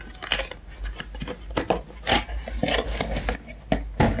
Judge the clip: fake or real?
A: real